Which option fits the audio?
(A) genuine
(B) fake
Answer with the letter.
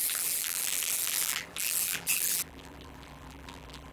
B